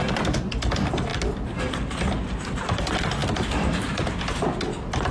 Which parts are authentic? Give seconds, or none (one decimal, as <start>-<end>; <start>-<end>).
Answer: 0.0-3.2; 4.3-5.1